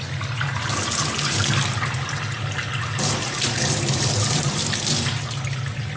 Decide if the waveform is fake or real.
real